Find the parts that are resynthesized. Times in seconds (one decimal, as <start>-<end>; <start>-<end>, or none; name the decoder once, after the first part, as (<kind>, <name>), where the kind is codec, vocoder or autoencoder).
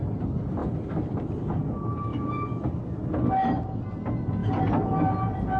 none